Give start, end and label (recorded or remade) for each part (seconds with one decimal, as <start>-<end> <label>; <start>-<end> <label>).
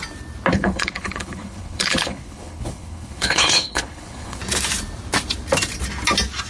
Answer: 0.0-0.5 recorded; 0.5-4.4 remade; 4.4-6.5 recorded